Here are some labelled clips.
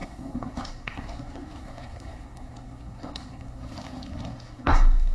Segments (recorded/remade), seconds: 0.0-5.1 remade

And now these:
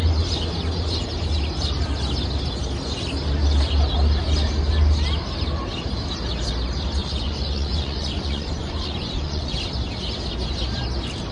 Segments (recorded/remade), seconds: 0.0-7.0 recorded; 7.0-9.5 remade; 9.5-11.3 recorded

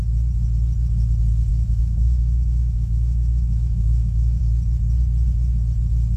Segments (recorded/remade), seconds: 0.0-1.5 recorded; 1.5-4.4 remade; 4.4-6.2 recorded

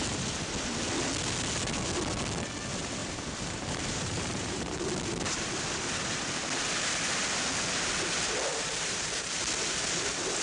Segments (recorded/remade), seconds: 0.0-3.0 recorded; 3.0-4.8 remade; 4.8-8.5 recorded; 8.5-9.4 remade; 9.4-10.4 recorded

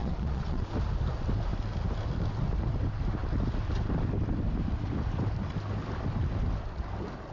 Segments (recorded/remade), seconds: 0.0-0.7 remade; 0.7-7.3 recorded

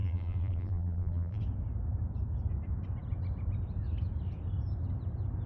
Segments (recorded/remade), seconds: 0.0-1.4 remade; 1.4-5.5 recorded

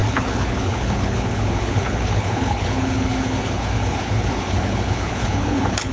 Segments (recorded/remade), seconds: 0.0-5.9 remade

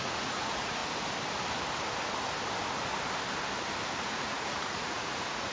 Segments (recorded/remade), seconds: 0.0-0.8 remade; 0.8-4.1 recorded; 4.1-5.5 remade